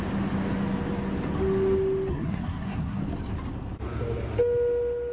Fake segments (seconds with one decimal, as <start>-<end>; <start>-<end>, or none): 2.1-3.0